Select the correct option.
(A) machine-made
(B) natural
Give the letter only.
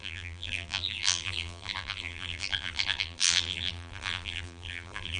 A